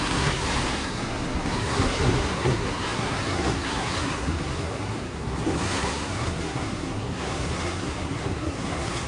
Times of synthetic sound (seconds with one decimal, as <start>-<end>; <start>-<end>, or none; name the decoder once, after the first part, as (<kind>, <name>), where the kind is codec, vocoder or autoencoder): 0.0-9.1 (codec, SNAC)